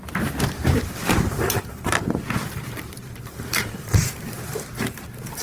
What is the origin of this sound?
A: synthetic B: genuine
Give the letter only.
A